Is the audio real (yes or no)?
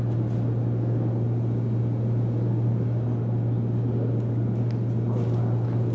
yes